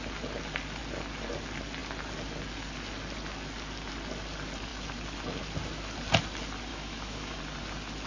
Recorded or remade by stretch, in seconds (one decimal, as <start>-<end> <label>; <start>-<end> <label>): 0.0-6.7 recorded; 6.7-7.4 remade; 7.4-8.1 recorded